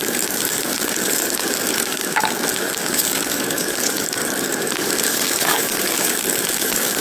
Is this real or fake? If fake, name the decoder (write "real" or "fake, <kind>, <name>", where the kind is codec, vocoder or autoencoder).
fake, codec, DAC